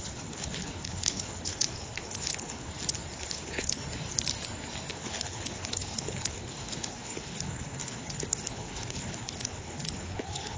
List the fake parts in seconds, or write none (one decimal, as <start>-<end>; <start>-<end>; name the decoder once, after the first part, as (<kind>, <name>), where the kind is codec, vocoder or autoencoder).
0.0-2.7 (codec, HILCodec); 3.2-3.8; 4.9-10.6